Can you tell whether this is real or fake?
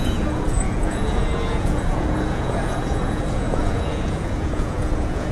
fake